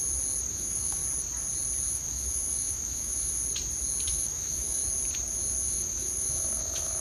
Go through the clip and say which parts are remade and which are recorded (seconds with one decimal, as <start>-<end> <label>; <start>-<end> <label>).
0.0-0.5 recorded; 0.5-1.0 remade; 1.0-1.9 recorded; 1.9-3.4 remade; 3.4-4.1 recorded; 4.1-4.8 remade; 4.8-5.6 recorded; 5.6-7.0 remade

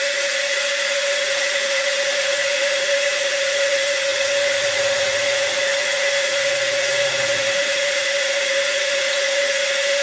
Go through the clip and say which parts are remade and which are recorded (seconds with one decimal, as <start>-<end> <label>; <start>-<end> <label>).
0.0-10.0 remade